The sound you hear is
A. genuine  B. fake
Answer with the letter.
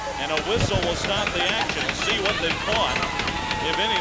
A